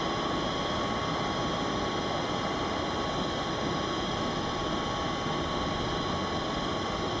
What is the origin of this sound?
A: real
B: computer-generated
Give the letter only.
A